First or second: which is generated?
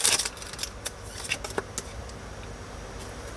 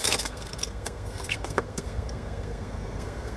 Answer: second